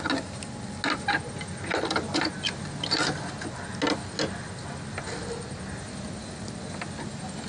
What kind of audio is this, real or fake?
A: real